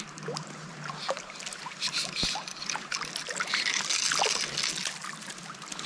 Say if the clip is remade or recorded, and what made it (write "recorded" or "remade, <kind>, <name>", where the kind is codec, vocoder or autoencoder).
recorded